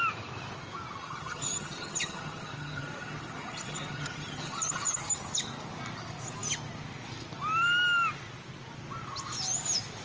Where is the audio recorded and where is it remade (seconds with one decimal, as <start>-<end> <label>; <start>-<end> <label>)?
0.0-1.0 recorded; 1.0-5.0 remade; 5.0-10.0 recorded